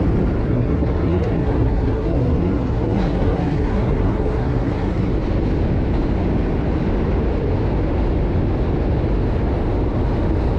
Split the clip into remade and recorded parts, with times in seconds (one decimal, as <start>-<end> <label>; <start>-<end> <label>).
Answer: 0.0-0.4 recorded; 0.4-5.1 remade; 5.1-10.6 recorded